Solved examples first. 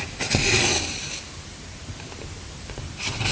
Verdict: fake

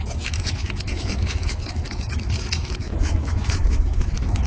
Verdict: fake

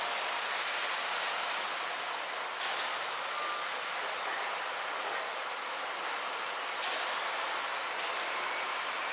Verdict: real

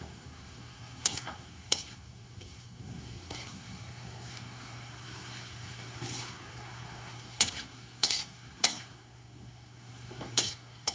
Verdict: fake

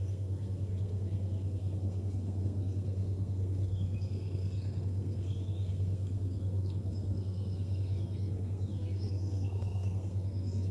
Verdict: fake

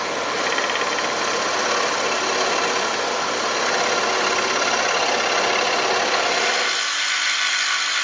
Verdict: real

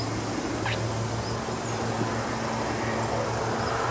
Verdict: real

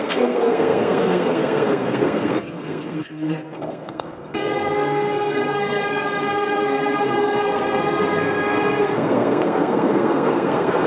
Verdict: fake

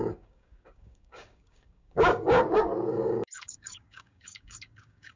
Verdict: fake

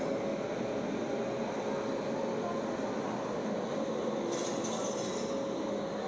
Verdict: real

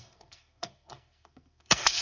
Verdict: fake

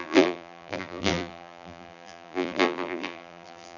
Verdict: fake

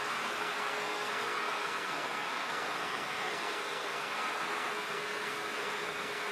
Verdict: fake